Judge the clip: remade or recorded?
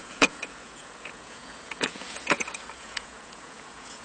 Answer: remade